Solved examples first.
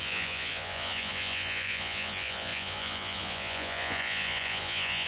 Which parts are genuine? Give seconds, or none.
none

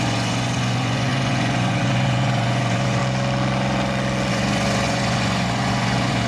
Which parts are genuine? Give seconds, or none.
3.0-4.3

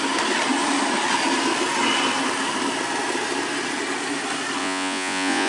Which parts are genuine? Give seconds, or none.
0.0-4.6

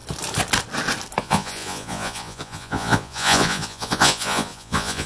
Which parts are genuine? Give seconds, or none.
0.0-1.2

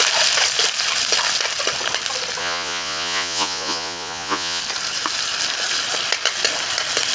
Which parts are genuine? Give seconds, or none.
0.0-2.4; 4.6-7.1

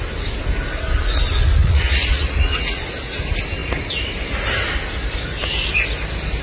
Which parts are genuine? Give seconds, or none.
0.0-1.6; 2.8-6.4

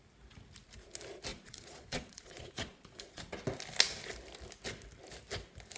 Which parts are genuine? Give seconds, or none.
0.0-1.3; 3.2-5.8